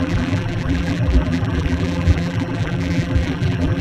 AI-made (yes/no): yes